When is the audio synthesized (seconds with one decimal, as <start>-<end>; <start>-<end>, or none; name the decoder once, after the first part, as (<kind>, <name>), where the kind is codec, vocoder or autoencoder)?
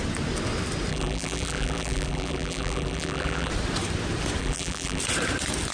0.9-3.5 (vocoder, BigVGAN v2); 4.4-5.0